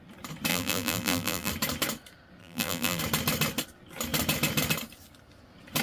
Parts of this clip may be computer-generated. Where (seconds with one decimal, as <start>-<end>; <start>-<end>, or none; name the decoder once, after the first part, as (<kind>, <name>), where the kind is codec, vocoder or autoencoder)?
0.5-1.5 (vocoder, BigVGAN v2); 2.4-3.0